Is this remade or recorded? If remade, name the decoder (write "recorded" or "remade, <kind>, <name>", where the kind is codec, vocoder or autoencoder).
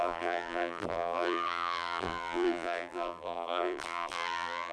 remade, vocoder, BigVGAN v2